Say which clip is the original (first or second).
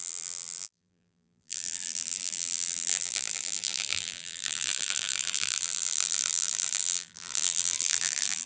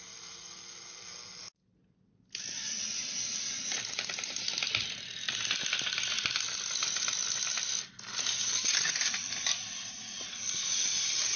second